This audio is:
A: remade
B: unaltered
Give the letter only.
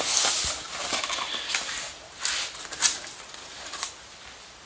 B